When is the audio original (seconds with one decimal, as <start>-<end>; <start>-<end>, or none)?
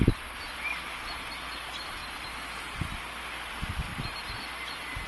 0.0-2.0; 3.0-5.1